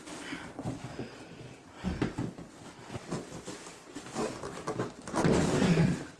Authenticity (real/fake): real